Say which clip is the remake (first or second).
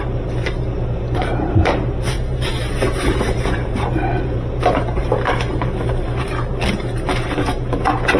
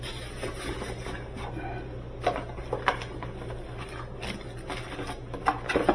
first